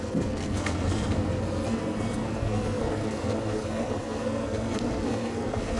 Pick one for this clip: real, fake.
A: fake